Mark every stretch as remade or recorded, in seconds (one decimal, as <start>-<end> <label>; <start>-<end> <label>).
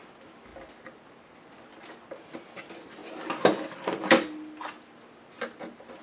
0.0-6.0 recorded